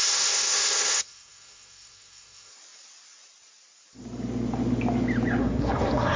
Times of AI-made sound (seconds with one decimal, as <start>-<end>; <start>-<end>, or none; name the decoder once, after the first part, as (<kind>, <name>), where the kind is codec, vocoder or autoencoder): 0.0-2.5 (codec, SNAC); 5.4-6.2